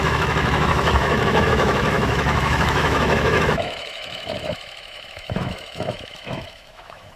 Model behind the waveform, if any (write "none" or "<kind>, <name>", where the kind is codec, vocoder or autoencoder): autoencoder, DAC-VAE